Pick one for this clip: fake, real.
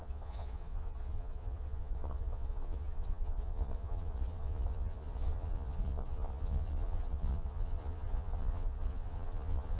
fake